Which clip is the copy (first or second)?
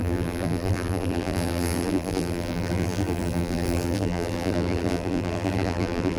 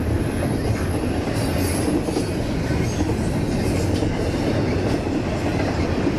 first